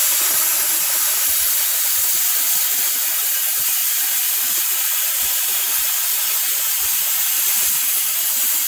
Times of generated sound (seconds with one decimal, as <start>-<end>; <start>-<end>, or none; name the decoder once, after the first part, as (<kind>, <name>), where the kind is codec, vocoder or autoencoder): none